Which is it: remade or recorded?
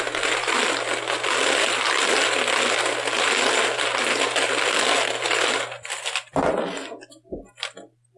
recorded